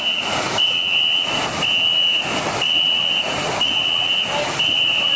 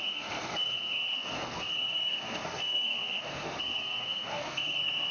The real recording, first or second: first